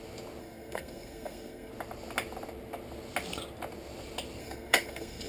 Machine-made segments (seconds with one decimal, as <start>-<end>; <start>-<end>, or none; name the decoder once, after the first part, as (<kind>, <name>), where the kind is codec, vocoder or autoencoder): 0.4-1.7 (codec, SNAC); 4.4-5.3